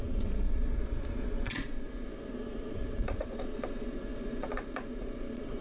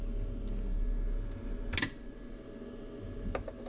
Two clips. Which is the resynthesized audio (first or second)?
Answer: first